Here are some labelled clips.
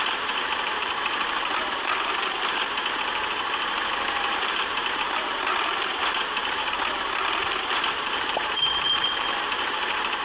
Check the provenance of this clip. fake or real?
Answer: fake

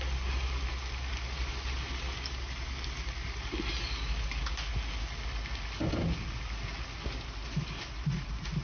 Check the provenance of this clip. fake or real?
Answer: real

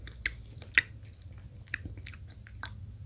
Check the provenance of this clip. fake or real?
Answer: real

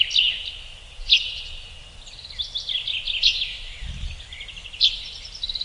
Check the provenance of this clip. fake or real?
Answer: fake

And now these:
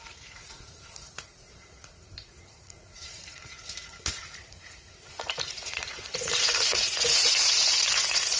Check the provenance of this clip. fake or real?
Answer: fake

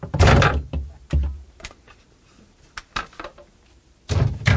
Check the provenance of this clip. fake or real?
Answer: real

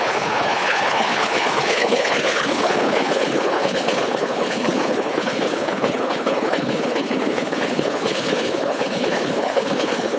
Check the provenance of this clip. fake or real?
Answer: fake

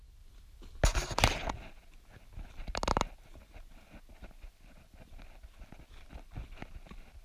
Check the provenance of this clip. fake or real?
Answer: real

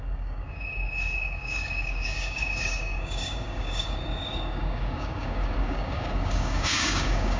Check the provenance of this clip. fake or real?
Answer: fake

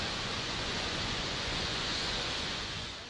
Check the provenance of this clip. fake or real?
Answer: fake